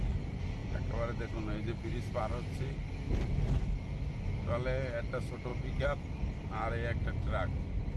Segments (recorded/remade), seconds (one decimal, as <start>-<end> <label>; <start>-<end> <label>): 0.0-8.0 recorded